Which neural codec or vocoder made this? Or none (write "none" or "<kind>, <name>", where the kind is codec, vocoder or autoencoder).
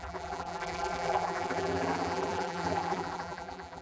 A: vocoder, BigVGAN v2